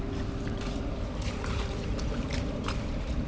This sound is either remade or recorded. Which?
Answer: remade